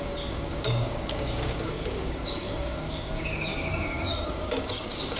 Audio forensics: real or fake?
fake